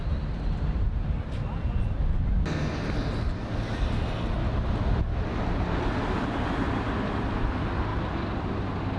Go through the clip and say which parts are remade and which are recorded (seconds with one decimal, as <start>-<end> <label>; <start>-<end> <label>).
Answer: 0.0-9.0 recorded